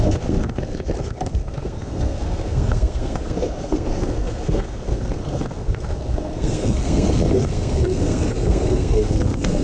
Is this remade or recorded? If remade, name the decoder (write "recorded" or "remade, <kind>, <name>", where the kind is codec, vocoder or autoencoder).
remade, codec, SNAC